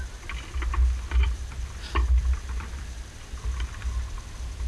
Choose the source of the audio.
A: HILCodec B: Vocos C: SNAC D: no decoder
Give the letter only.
D